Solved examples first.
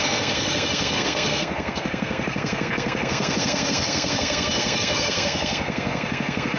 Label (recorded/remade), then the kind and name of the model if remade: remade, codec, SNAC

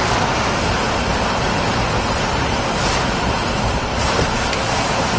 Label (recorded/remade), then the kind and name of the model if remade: recorded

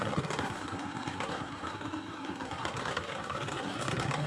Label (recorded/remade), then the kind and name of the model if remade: remade, codec, SNAC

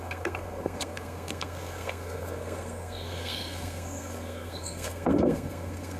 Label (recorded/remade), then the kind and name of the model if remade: remade, codec, SNAC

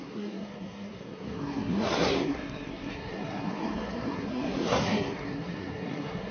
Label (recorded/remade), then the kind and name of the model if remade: remade, codec, SNAC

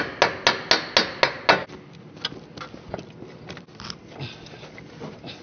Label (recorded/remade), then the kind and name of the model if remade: recorded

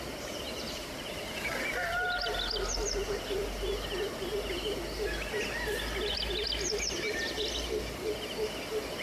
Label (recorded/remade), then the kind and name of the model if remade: recorded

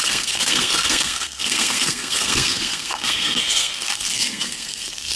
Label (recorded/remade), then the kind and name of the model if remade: remade, codec, SNAC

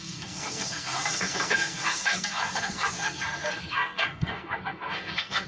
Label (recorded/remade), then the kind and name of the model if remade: remade, codec, SNAC